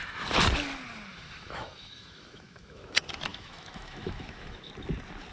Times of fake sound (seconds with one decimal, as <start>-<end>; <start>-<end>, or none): 1.1-2.9; 3.3-4.7